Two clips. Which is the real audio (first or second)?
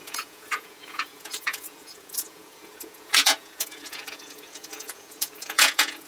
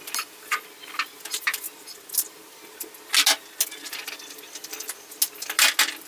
second